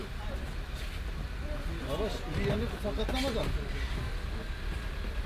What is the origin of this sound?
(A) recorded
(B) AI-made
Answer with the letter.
A